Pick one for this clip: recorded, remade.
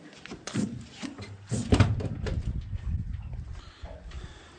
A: recorded